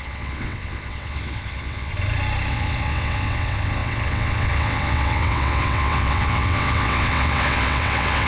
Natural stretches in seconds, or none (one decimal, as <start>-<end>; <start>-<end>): 1.9-2.5